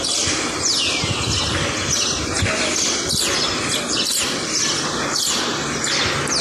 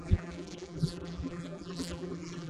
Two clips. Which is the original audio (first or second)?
first